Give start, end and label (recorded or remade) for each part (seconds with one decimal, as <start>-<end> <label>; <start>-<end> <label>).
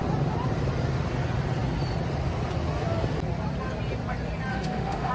0.0-4.5 recorded; 4.5-5.1 remade